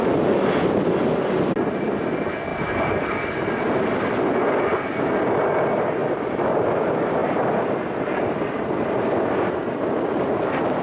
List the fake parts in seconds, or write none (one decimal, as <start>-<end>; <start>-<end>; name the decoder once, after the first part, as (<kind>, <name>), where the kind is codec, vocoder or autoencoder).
2.5-3.5 (vocoder, BigVGAN v2); 6.0-6.7